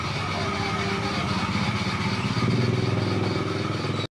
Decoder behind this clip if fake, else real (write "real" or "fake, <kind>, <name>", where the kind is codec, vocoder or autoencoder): real